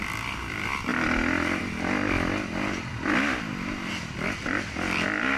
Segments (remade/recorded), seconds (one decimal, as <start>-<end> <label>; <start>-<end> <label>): 0.0-5.4 recorded